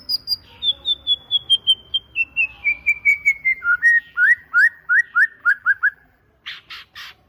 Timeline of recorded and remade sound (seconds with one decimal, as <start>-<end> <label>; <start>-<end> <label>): 0.0-3.1 recorded; 3.1-4.9 remade; 4.9-5.4 recorded; 5.4-6.2 remade; 6.2-7.3 recorded